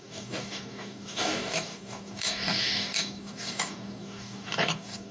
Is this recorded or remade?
remade